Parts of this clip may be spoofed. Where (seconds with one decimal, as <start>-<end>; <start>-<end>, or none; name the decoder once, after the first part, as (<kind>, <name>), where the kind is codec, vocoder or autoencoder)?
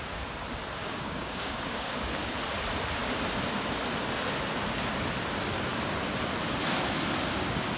0.8-2.2 (codec, DAC)